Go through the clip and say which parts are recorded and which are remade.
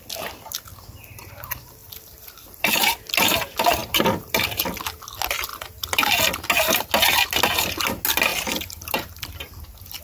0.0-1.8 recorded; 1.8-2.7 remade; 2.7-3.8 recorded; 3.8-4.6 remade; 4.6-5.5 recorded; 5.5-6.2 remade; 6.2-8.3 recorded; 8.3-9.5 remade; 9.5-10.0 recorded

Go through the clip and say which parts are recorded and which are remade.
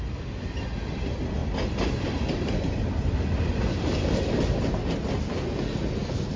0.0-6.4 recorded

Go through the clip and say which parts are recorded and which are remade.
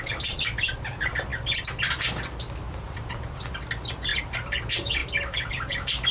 0.0-1.3 remade; 1.3-2.6 recorded; 2.6-6.1 remade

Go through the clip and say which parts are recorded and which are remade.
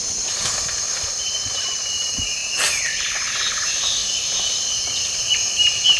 0.0-2.4 remade; 2.4-3.3 recorded; 3.3-4.0 remade; 4.0-5.0 recorded; 5.0-6.0 remade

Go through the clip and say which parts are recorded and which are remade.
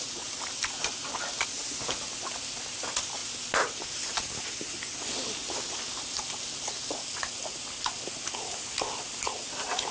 0.0-9.9 recorded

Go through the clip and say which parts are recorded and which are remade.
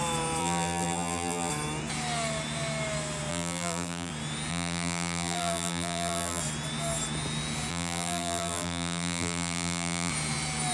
0.0-0.4 recorded; 0.4-1.5 remade; 1.5-3.3 recorded; 3.3-4.1 remade; 4.1-4.5 recorded; 4.5-6.4 remade; 6.4-7.7 recorded; 7.7-10.1 remade; 10.1-10.7 recorded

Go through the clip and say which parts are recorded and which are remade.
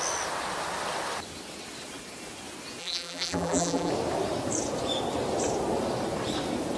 0.0-2.8 recorded; 2.8-3.9 remade; 3.9-6.8 recorded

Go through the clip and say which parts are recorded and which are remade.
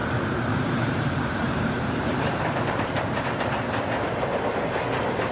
0.0-3.2 remade; 3.2-5.3 recorded